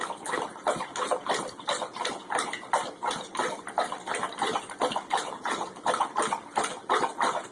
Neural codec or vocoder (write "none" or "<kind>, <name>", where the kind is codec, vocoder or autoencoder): none